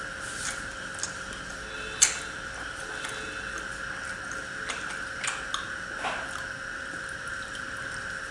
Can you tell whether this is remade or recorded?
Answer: recorded